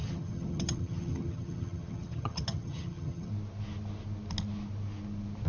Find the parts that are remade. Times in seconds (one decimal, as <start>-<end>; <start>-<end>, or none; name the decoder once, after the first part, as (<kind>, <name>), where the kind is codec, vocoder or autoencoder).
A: 0.0-3.3 (vocoder, HiFi-GAN)